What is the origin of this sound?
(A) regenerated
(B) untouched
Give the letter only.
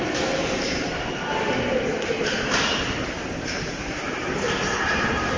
A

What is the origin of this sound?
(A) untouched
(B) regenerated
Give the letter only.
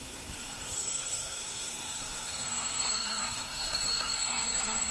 B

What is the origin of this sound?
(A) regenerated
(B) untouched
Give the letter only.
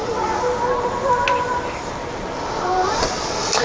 B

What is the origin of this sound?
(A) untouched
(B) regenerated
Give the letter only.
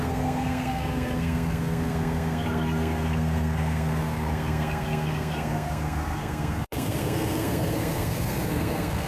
B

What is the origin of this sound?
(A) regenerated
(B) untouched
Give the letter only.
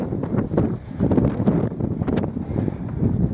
A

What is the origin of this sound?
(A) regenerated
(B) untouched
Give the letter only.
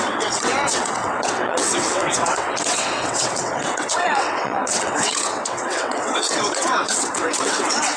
A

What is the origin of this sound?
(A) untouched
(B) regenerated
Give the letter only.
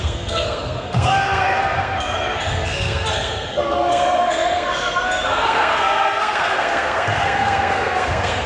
B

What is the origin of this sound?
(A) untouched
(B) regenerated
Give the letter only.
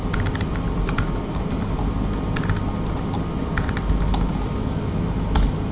A